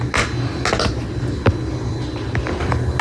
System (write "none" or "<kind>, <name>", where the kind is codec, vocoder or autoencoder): none